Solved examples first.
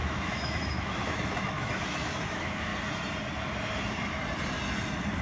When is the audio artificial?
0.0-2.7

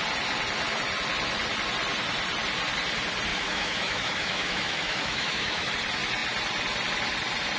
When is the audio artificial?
3.3-5.7

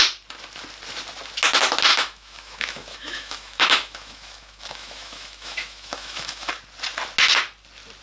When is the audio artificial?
1.9-6.5